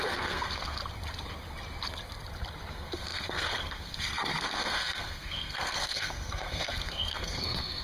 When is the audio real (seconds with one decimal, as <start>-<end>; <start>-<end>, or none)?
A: 0.8-2.7